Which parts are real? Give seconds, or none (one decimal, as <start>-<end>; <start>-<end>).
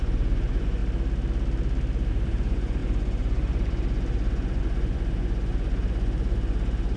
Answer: 0.8-2.1